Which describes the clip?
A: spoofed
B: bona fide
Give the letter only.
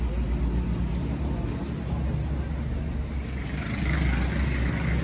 B